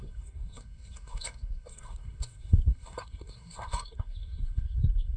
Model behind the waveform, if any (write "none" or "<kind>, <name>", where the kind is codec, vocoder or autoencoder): codec, SNAC